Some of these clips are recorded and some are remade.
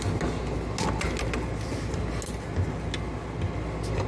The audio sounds recorded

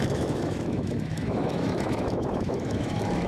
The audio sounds remade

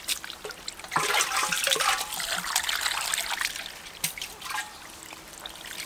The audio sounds recorded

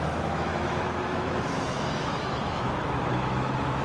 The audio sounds remade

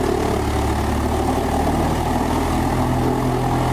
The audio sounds recorded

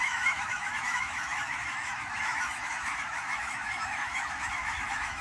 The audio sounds remade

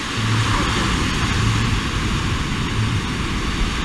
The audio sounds recorded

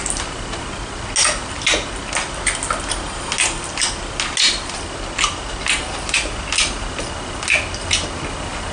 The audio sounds recorded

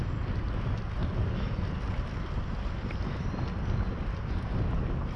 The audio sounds recorded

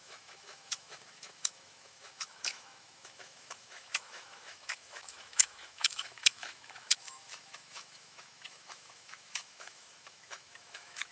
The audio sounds remade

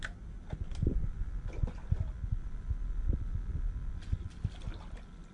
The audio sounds recorded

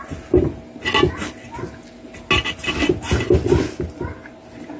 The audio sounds recorded